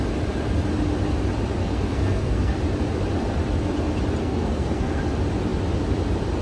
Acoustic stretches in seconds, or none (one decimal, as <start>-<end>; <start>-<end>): 0.0-1.6; 2.6-4.2; 5.0-6.4